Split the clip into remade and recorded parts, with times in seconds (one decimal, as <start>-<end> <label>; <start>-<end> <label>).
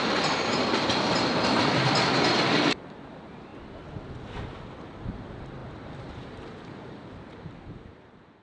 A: 0.0-3.5 remade; 3.5-4.7 recorded; 4.7-8.4 remade